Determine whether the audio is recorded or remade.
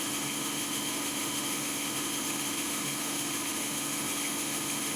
remade